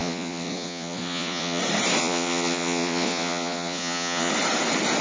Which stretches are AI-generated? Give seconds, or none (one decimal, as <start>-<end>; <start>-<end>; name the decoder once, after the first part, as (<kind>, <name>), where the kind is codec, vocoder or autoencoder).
0.0-1.6 (vocoder, Vocos); 2.0-4.3

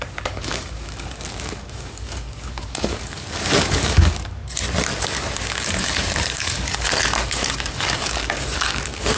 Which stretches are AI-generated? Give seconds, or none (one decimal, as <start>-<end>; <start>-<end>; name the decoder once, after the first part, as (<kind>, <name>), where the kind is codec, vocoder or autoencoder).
0.0-4.4 (codec, DAC); 5.0-9.2

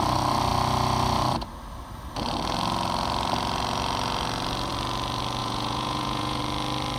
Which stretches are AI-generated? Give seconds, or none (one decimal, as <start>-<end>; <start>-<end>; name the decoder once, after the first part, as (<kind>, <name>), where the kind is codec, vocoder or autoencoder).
5.4-6.4 (vocoder, Vocos)

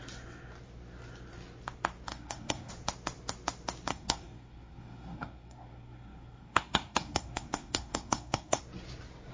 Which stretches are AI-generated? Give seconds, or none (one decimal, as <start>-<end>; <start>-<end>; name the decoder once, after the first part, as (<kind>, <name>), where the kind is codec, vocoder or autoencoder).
2.1-2.7 (codec, SNAC); 3.9-8.6

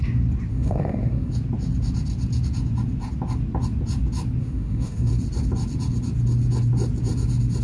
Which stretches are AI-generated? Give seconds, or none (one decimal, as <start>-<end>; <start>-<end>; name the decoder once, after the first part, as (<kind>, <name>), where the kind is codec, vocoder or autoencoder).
0.5-1.3 (autoencoder, DAC-VAE); 4.4-5.1

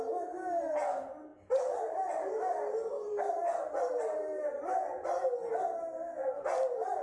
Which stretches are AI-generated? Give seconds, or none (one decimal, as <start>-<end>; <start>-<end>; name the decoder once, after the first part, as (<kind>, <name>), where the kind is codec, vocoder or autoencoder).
none

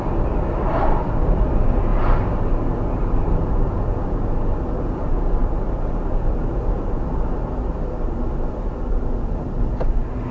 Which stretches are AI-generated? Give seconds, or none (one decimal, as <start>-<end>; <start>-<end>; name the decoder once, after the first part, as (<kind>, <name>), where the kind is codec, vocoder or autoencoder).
5.4-6.5 (vocoder, BigVGAN v2)

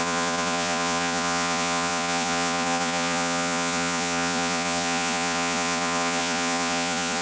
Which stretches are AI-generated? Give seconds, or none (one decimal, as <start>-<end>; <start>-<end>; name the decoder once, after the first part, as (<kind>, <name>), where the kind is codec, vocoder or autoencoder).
0.0-7.2 (vocoder, Vocos)